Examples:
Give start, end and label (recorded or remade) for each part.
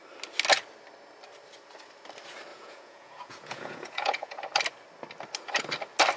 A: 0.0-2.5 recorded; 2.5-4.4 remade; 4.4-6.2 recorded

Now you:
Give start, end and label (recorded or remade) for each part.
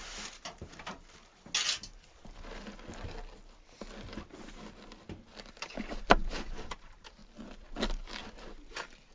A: 0.0-1.3 remade; 1.3-5.5 recorded; 5.5-7.2 remade; 7.2-8.4 recorded; 8.4-9.1 remade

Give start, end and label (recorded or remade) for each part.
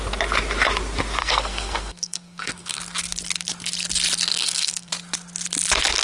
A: 0.0-1.2 recorded; 1.2-2.8 remade; 2.8-4.3 recorded; 4.3-4.9 remade; 4.9-6.0 recorded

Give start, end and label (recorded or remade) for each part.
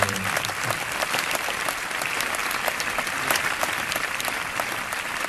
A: 0.0-5.3 remade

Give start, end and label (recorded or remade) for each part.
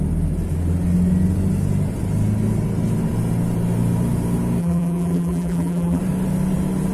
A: 0.0-4.6 recorded; 4.6-6.0 remade; 6.0-6.9 recorded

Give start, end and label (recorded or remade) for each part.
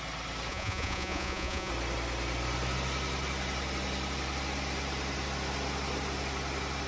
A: 0.0-0.5 recorded; 0.5-1.7 remade; 1.7-6.9 recorded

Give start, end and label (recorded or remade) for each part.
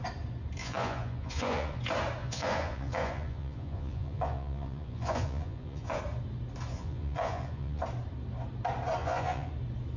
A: 0.0-0.6 recorded; 0.6-1.8 remade; 1.8-2.2 recorded; 2.2-6.0 remade; 6.0-6.7 recorded; 6.7-7.8 remade; 7.8-9.0 recorded; 9.0-9.5 remade; 9.5-10.0 recorded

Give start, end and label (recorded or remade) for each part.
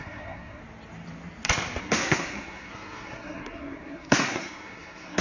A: 0.0-0.6 remade; 0.6-1.8 recorded; 1.8-5.2 remade